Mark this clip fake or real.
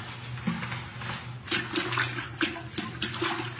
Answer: real